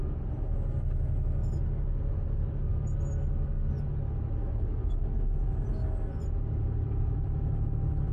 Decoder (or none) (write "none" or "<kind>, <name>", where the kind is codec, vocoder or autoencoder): none